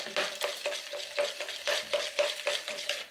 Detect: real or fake real